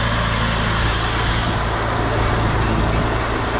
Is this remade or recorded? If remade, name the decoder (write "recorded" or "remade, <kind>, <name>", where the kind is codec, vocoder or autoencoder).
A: recorded